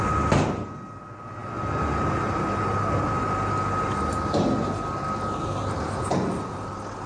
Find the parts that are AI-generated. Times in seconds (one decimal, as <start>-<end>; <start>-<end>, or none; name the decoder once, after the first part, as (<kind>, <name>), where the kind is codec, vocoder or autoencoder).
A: none